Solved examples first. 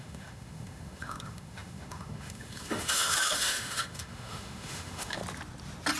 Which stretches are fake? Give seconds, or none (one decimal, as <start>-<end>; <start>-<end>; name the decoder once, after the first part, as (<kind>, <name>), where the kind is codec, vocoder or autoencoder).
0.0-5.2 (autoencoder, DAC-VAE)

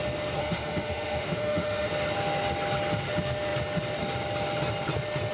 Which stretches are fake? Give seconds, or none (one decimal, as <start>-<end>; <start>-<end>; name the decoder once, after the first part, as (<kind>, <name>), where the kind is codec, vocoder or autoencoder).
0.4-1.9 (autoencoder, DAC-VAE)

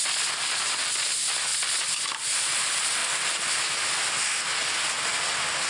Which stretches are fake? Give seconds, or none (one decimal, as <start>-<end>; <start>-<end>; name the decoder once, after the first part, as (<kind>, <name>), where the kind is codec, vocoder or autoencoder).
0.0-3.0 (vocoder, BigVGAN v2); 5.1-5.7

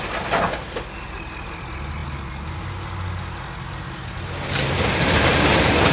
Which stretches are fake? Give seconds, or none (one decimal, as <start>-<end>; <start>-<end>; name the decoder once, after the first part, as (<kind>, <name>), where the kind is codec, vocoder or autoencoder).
none